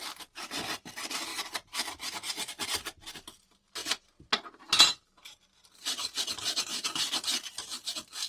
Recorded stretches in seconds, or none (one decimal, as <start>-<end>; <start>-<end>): 0.0-1.3; 2.5-8.3